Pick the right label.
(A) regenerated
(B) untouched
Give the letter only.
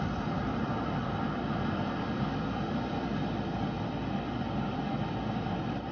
A